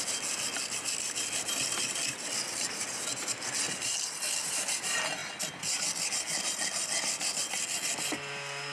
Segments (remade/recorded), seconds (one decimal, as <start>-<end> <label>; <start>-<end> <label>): 0.0-8.7 recorded